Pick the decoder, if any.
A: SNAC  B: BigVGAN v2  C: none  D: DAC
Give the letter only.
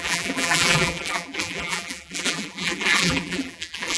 B